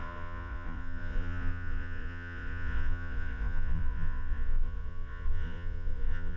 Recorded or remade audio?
remade